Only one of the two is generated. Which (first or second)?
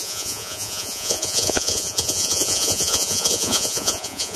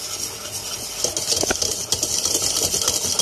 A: first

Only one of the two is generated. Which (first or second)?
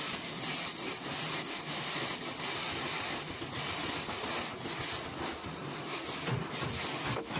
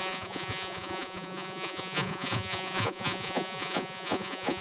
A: second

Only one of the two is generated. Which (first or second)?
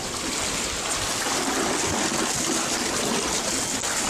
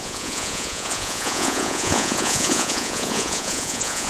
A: second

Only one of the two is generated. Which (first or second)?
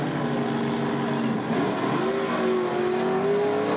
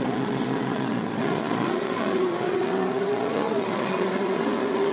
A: second